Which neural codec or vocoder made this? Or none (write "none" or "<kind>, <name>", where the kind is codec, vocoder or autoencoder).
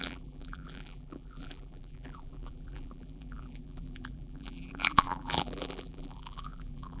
vocoder, BigVGAN v2